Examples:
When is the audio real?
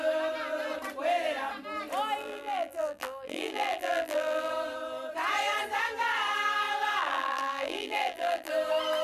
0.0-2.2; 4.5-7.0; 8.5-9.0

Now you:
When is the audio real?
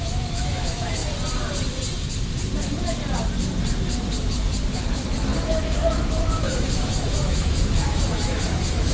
1.0-2.6; 3.0-4.3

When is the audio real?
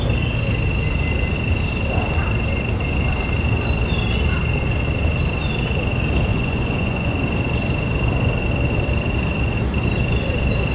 0.0-6.3; 7.1-10.7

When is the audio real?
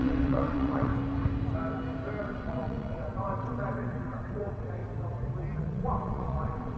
0.9-2.2; 4.8-5.6